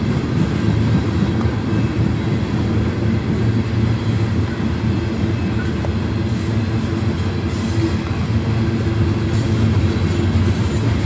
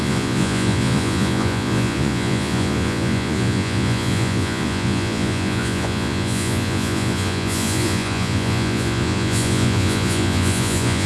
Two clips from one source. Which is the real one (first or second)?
first